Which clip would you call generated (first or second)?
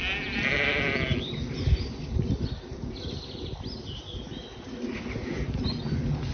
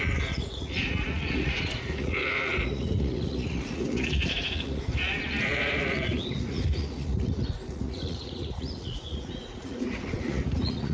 second